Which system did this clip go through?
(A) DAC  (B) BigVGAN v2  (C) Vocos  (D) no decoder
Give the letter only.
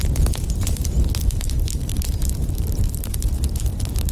B